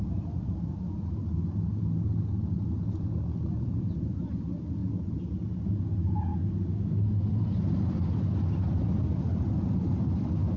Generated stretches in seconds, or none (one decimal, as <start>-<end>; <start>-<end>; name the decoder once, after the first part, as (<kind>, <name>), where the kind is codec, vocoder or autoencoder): none